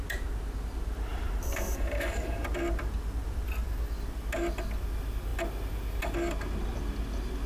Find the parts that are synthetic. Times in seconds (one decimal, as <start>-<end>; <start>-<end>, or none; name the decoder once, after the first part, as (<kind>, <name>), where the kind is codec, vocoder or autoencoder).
1.1-2.4 (vocoder, BigVGAN v2)